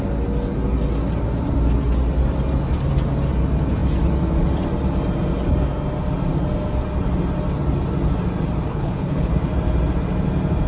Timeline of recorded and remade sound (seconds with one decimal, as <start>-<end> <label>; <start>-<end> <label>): 0.0-8.7 recorded; 8.7-9.3 remade; 9.3-10.7 recorded